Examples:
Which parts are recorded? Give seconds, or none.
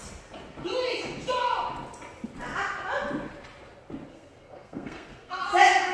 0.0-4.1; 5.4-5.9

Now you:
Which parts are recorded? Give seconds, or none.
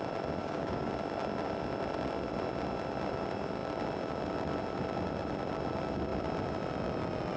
0.0-0.4; 0.9-7.4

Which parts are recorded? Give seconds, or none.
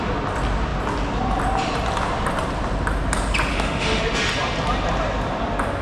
0.0-3.5; 4.0-5.8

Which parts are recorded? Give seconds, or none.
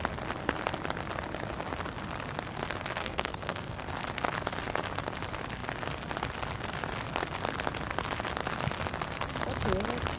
0.0-3.0; 3.9-10.2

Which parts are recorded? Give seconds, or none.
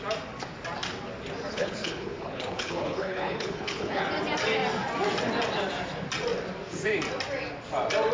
0.0-1.5; 4.0-8.1